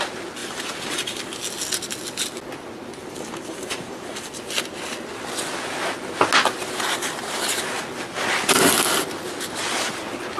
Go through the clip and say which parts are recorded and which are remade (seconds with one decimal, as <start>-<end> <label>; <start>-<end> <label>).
0.0-0.4 recorded; 0.4-1.2 remade; 1.2-3.0 recorded; 3.0-4.3 remade; 4.3-10.4 recorded

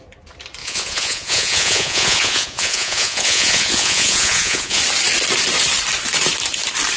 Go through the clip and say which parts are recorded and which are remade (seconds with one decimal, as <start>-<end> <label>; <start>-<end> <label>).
0.0-0.6 recorded; 0.6-4.8 remade; 4.8-7.0 recorded

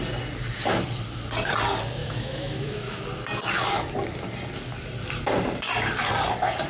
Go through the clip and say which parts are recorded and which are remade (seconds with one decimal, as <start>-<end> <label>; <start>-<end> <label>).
0.0-2.0 recorded; 2.0-3.0 remade; 3.0-6.7 recorded

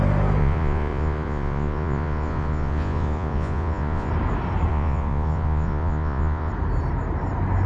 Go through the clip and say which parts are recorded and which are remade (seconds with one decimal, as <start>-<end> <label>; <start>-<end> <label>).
0.0-0.4 recorded; 0.4-4.1 remade; 4.1-4.7 recorded; 4.7-6.5 remade; 6.5-7.7 recorded

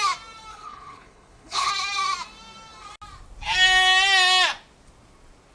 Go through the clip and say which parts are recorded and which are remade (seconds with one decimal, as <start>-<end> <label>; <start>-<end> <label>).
0.0-0.5 recorded; 0.5-1.7 remade; 1.7-5.5 recorded

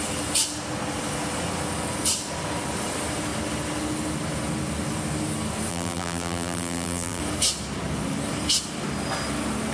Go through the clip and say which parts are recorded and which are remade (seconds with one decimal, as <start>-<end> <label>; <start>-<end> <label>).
0.0-5.7 recorded; 5.7-7.2 remade; 7.2-9.7 recorded